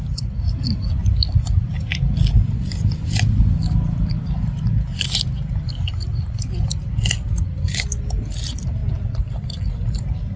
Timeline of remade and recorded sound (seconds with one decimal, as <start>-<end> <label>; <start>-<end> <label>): 0.0-10.4 recorded